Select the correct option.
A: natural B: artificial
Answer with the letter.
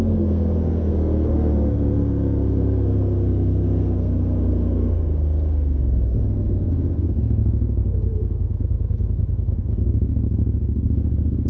B